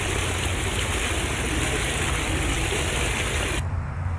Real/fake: real